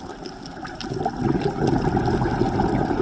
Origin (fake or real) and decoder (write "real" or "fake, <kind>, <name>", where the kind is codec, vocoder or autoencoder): real